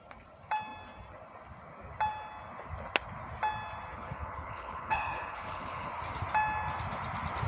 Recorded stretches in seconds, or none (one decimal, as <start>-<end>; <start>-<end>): 0.0-3.9; 5.9-7.5